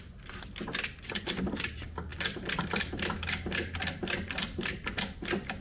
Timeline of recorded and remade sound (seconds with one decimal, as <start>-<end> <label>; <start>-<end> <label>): 0.0-5.6 recorded